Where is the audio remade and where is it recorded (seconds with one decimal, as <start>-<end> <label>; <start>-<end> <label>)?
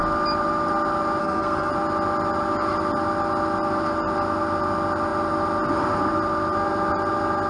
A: 0.0-1.2 recorded; 1.2-1.7 remade; 1.7-7.5 recorded